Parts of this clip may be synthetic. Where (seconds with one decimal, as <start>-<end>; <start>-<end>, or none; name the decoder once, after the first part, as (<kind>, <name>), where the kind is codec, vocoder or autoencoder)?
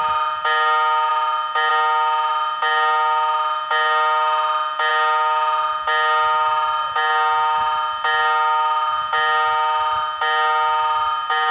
none